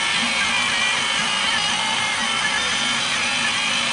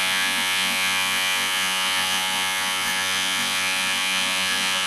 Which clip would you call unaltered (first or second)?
first